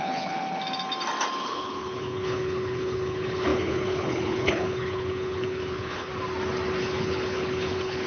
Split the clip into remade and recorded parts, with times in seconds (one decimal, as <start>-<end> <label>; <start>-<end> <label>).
0.0-0.6 remade; 0.6-1.4 recorded; 1.4-6.1 remade; 6.1-6.8 recorded; 6.8-8.1 remade

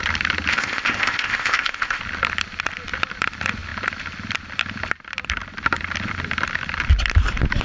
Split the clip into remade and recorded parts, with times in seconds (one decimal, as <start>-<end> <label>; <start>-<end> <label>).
0.0-0.5 recorded; 0.5-2.0 remade; 2.0-7.6 recorded

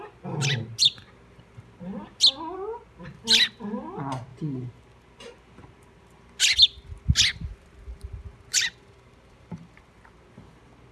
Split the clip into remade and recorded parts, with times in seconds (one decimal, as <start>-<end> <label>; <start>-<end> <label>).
0.0-4.3 recorded; 4.3-4.8 remade; 4.8-8.5 recorded; 8.5-9.8 remade; 9.8-10.9 recorded

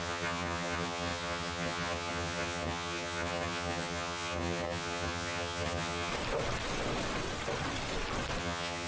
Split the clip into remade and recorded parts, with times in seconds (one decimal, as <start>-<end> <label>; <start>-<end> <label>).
0.0-6.1 remade; 6.1-8.4 recorded; 8.4-8.9 remade

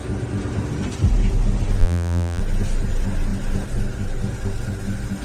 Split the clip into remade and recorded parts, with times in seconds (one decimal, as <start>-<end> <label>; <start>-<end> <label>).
0.0-1.8 recorded; 1.8-2.4 remade; 2.4-5.2 recorded

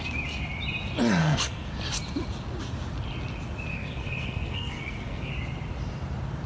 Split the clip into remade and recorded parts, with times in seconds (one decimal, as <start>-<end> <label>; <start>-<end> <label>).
0.0-1.2 recorded; 1.2-1.7 remade; 1.7-3.7 recorded; 3.7-5.3 remade; 5.3-6.5 recorded

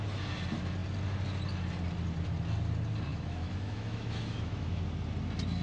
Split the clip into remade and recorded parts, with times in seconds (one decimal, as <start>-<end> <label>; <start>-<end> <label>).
0.0-3.1 recorded; 3.1-4.8 remade; 4.8-5.6 recorded